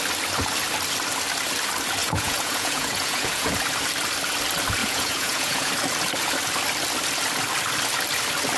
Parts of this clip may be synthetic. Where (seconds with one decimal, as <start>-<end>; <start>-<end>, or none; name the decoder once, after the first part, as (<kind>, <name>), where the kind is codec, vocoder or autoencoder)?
2.0-3.5 (vocoder, Vocos); 4.8-5.7